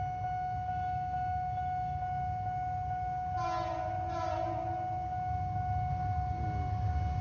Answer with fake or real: real